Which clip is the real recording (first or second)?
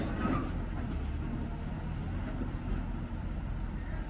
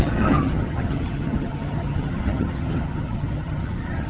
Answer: first